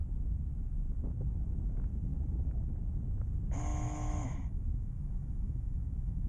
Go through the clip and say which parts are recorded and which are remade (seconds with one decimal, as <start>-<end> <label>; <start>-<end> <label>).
0.0-3.7 recorded; 3.7-6.3 remade